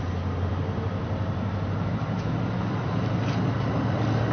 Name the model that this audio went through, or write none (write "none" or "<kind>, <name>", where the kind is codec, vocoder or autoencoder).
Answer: vocoder, BigVGAN v2